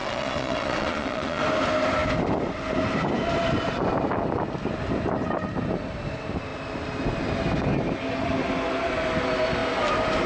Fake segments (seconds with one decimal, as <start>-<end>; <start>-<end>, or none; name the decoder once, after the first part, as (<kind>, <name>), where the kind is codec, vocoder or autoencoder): 0.0-1.4 (vocoder, Vocos)